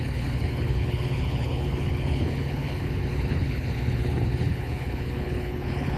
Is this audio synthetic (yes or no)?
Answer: yes